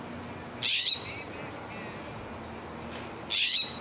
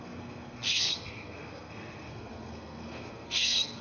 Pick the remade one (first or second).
second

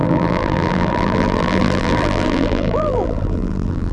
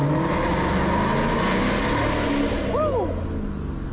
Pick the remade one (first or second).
first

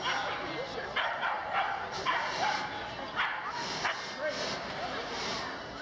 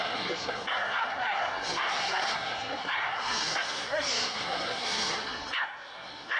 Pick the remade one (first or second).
second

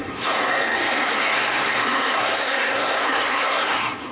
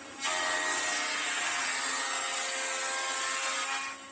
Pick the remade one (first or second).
first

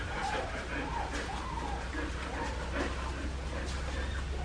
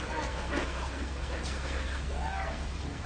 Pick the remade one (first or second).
second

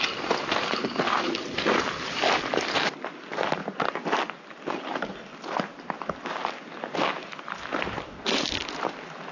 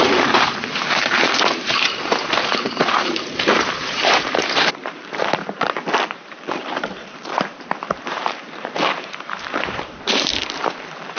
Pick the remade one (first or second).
second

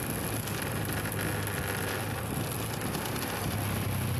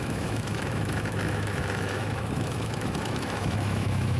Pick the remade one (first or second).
second